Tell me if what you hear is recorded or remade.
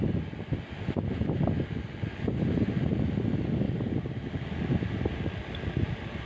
recorded